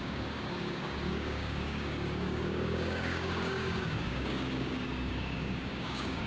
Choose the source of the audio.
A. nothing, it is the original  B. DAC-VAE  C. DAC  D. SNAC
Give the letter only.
C